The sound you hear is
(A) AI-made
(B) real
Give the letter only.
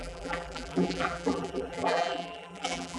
A